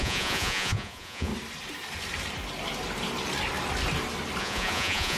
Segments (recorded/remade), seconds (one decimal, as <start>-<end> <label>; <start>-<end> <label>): 0.0-1.3 remade; 1.3-4.4 recorded; 4.4-5.2 remade